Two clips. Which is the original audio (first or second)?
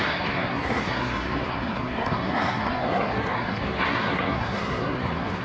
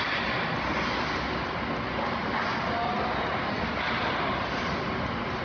second